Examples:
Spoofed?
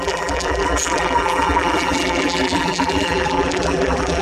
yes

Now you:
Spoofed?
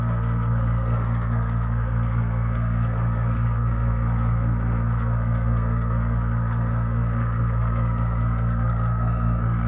yes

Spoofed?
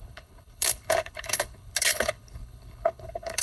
yes